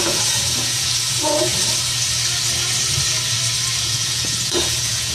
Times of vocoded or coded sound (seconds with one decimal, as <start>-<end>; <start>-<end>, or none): 0.0-1.5; 3.8-5.1